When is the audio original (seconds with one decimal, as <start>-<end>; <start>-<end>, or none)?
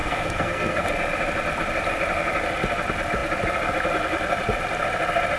0.9-5.4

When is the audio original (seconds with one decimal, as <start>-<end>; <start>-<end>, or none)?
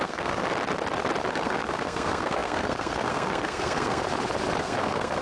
0.4-1.3; 4.0-4.6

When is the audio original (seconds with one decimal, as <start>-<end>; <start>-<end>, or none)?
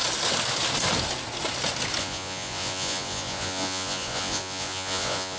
0.0-2.0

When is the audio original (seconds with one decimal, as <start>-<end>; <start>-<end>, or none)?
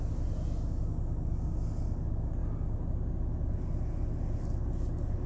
0.0-5.3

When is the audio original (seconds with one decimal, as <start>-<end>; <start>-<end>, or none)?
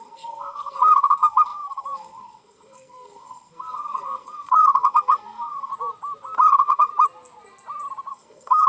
5.7-6.5; 6.9-8.1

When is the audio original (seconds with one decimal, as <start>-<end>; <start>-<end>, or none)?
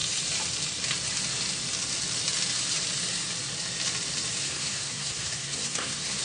0.0-4.4